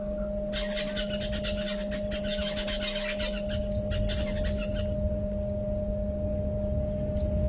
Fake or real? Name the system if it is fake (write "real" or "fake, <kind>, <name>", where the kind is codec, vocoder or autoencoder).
real